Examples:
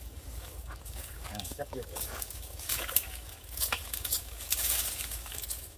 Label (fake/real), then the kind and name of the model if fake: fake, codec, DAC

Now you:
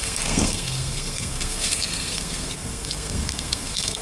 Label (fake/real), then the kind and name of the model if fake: fake, codec, SNAC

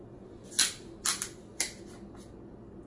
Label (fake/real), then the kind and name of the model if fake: real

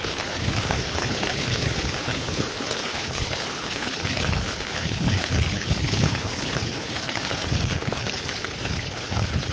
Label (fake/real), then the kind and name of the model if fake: fake, codec, HILCodec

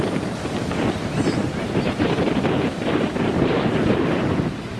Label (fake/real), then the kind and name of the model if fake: fake, vocoder, BigVGAN v2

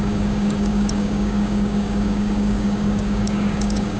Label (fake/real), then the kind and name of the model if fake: fake, codec, DAC